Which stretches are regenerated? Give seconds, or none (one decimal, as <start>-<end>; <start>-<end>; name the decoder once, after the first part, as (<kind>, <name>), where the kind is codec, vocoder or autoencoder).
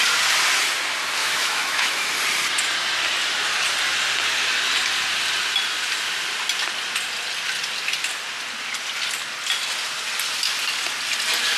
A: 1.2-2.1 (autoencoder, DAC-VAE)